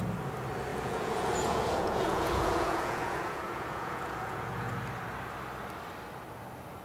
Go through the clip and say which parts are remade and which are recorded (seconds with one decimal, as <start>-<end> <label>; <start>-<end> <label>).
0.0-0.7 recorded; 0.7-4.8 remade; 4.8-6.8 recorded